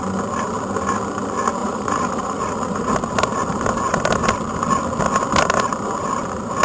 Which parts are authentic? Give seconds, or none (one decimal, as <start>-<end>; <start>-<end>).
0.0-1.6; 2.9-6.6